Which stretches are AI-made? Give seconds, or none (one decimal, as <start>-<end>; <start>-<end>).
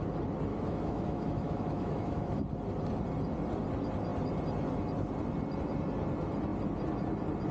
0.5-2.4